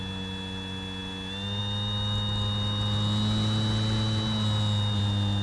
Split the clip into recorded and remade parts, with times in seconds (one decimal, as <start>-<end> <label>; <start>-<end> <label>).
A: 0.0-5.4 recorded